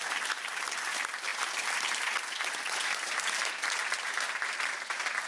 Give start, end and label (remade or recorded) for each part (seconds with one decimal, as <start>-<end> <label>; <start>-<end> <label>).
0.0-5.3 recorded